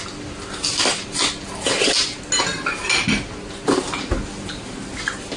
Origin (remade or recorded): recorded